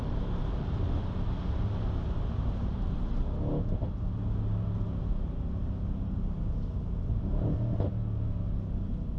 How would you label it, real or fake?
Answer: real